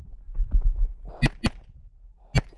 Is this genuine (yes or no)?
yes